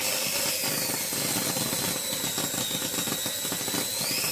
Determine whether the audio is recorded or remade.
recorded